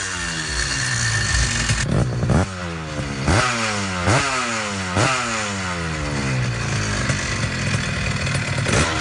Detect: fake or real real